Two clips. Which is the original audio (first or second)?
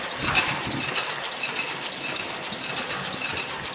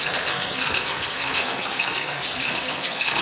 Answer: first